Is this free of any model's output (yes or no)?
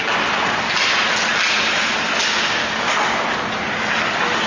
yes